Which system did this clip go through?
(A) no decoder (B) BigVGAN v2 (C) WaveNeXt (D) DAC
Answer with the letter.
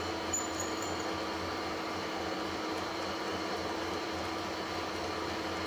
B